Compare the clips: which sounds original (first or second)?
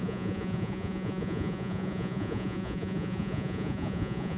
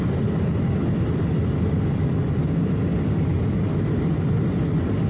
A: second